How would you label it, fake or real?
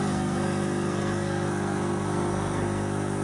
fake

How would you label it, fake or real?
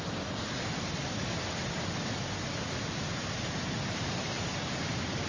real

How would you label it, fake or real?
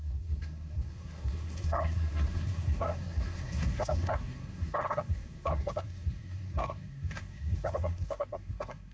fake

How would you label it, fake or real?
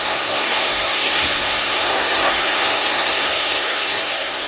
fake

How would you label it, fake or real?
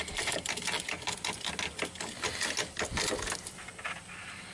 real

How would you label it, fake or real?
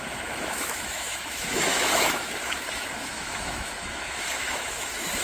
fake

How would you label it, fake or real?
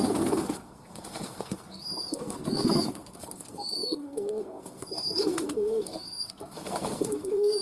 fake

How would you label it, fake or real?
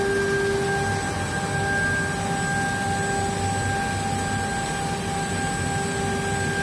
real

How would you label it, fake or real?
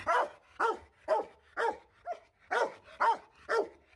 real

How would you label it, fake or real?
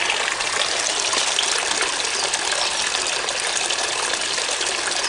real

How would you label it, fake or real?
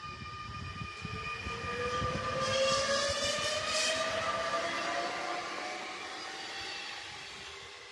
real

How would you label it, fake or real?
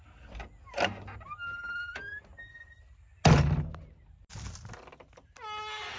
real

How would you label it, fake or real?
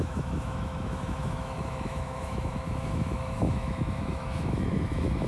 fake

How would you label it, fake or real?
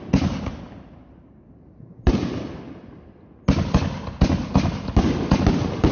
real